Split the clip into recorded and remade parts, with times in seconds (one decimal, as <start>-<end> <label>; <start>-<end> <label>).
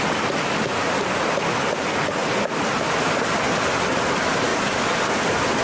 0.0-5.6 recorded